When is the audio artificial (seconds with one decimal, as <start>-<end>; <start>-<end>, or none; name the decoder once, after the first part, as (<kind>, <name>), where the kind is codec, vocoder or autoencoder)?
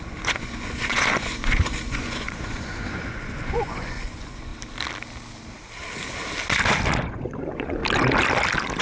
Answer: 0.0-4.5 (vocoder, Vocos); 7.0-7.8